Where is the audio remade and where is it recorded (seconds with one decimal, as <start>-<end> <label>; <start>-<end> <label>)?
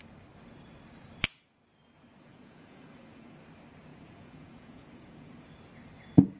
0.0-2.3 recorded; 2.3-3.4 remade; 3.4-3.9 recorded; 3.9-5.5 remade; 5.5-6.4 recorded